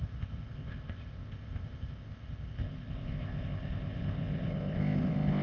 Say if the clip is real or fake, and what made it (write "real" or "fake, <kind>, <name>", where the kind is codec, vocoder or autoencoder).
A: fake, codec, ZipCodec